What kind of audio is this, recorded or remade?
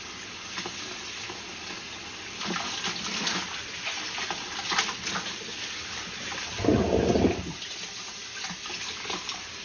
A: recorded